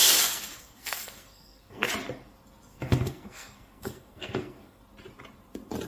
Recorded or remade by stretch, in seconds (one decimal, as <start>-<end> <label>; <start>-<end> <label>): 0.0-1.9 remade; 1.9-2.7 recorded; 2.7-4.8 remade; 4.8-5.9 recorded